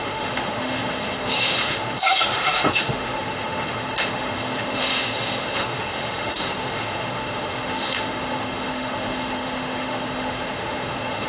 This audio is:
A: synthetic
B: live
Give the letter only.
A